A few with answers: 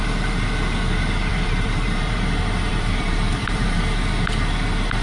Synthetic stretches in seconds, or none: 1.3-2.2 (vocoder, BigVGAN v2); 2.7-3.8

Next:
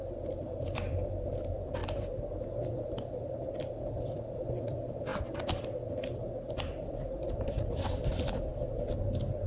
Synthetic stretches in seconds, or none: 0.0-1.8 (vocoder, BigVGAN v2); 2.4-5.1; 6.4-8.5

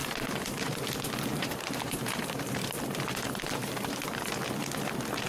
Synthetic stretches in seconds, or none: 0.0-0.6 (vocoder, BigVGAN v2); 1.3-4.3

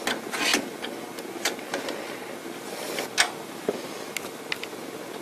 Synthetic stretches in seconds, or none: none

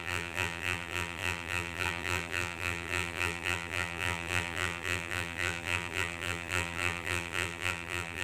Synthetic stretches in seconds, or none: 0.0-8.2 (vocoder, BigVGAN v2)

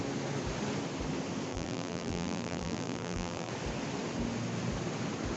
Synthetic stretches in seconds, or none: 1.5-3.5 (vocoder, BigVGAN v2)